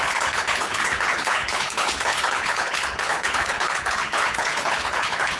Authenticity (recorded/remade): remade